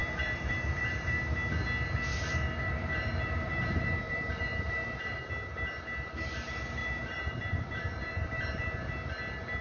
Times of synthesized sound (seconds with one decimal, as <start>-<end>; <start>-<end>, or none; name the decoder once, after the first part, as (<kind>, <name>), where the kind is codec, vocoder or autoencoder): 0.0-1.2 (vocoder, BigVGAN v2); 2.1-5.3; 6.8-8.4